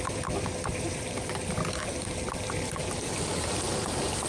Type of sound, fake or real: real